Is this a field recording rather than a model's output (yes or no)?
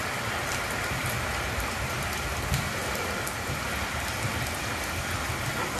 yes